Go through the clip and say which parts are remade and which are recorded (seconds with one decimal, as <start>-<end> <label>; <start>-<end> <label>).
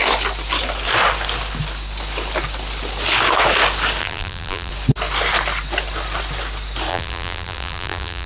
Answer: 0.0-4.0 recorded; 4.0-4.7 remade; 4.7-6.9 recorded; 6.9-8.3 remade